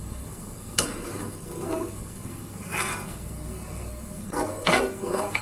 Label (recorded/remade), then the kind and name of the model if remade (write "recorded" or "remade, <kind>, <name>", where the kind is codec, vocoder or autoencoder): remade, codec, SNAC